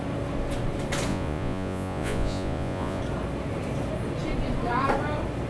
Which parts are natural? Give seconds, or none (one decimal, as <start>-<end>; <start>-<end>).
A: 0.0-1.1; 3.0-5.5

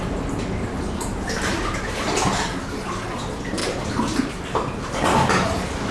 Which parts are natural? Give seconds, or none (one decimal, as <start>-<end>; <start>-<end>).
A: 0.0-5.9

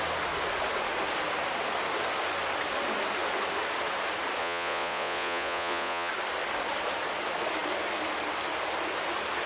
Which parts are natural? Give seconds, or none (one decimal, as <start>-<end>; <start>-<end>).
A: 0.0-4.4; 6.1-9.5

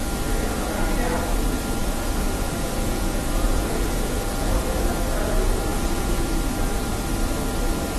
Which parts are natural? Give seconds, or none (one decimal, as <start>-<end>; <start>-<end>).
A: 0.0-1.8; 4.9-5.7; 6.2-8.0

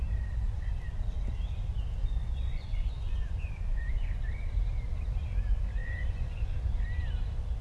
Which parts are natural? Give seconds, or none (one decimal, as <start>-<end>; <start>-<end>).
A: 0.0-2.0; 4.5-5.8; 6.7-7.6

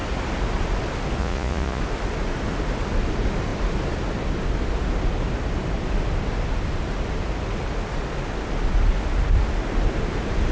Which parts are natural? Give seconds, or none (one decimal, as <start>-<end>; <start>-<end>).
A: 0.0-1.2; 1.8-10.5

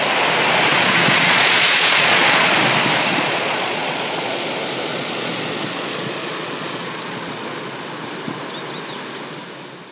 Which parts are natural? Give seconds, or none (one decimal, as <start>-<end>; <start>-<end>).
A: 0.0-0.7; 2.5-3.1; 4.5-4.9; 7.8-9.9

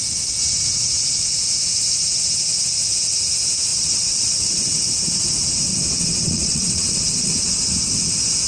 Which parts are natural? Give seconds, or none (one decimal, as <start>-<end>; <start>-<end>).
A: 0.0-3.7; 4.7-5.7; 7.3-8.5